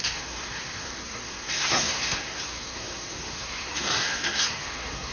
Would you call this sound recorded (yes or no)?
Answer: no